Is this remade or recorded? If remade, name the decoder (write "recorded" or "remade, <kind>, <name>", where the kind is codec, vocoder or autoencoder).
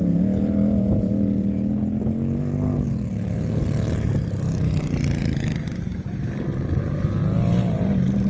recorded